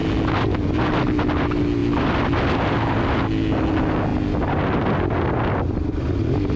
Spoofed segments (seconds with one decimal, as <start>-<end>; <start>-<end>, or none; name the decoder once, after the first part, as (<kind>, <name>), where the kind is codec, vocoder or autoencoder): none